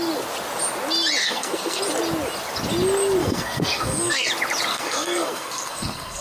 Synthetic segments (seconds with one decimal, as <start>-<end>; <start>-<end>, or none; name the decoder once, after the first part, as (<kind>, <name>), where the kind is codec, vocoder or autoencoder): 1.2-1.8 (codec, SNAC); 3.2-4.3; 4.7-6.2